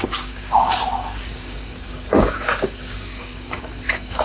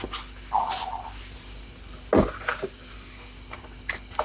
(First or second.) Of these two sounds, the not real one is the first